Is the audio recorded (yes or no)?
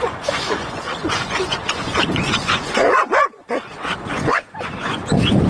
no